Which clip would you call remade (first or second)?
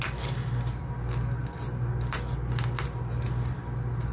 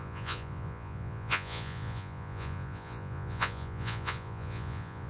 second